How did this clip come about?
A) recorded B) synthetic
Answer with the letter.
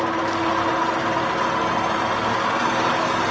A